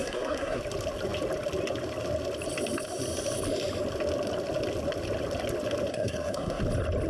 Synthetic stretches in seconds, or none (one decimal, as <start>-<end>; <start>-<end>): 0.0-0.6; 5.9-6.6